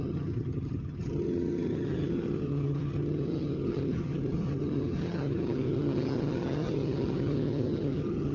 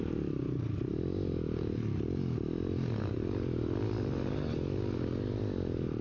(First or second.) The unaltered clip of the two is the second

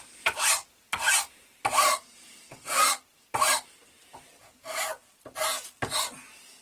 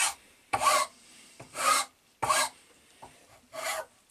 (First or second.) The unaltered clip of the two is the first